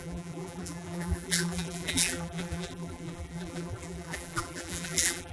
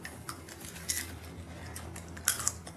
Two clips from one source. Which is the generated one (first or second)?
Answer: first